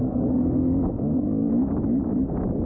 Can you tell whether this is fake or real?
real